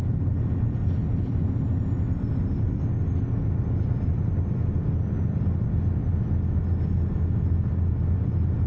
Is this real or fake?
real